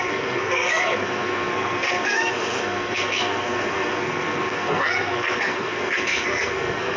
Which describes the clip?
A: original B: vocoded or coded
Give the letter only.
B